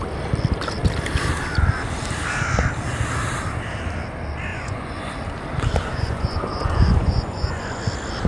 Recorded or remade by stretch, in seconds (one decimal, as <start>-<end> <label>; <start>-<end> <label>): 0.0-4.5 recorded; 4.5-5.1 remade; 5.1-5.9 recorded; 5.9-7.8 remade; 7.8-8.3 recorded